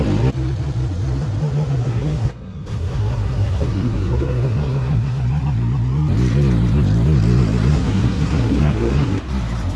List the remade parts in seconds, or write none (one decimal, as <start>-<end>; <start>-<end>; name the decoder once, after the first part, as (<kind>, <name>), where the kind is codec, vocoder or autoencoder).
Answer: 1.8-5.2 (codec, SNAC); 7.7-9.2